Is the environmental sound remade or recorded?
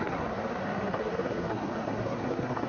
remade